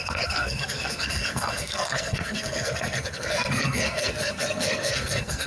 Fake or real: fake